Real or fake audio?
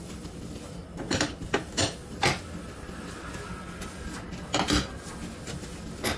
real